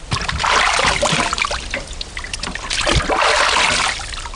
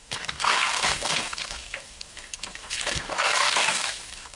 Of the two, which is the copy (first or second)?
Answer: second